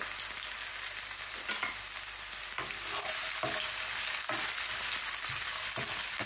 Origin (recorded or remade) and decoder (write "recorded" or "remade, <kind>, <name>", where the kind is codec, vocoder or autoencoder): recorded